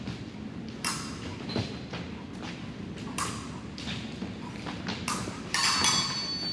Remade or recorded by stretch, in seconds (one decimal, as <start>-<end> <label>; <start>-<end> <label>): 0.0-6.5 recorded